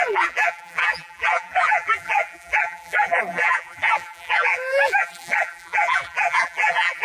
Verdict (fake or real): fake